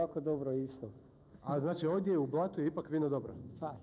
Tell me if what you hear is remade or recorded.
remade